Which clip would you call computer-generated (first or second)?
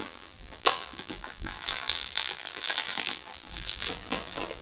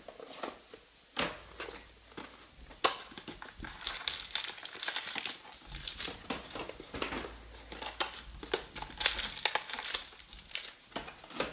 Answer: first